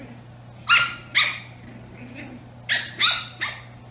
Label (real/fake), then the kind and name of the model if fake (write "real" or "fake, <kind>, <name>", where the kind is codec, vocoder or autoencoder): real